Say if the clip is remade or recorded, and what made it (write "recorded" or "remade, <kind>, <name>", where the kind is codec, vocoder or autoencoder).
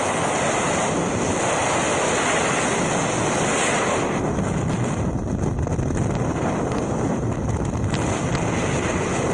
recorded